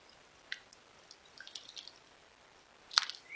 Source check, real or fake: real